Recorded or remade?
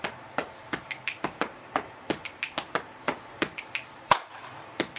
recorded